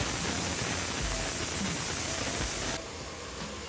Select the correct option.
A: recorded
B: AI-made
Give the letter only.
A